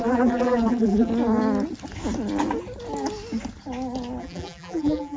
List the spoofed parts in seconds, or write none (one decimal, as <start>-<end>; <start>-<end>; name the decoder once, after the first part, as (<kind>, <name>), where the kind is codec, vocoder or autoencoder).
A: 0.0-1.1 (vocoder, BigVGAN v2); 4.2-5.2